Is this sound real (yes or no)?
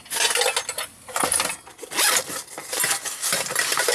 yes